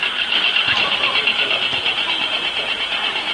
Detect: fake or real real